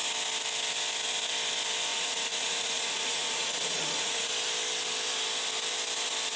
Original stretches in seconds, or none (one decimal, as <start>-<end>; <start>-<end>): 0.0-1.9; 4.3-6.4